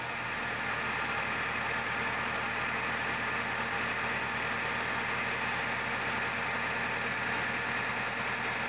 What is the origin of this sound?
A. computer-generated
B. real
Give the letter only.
B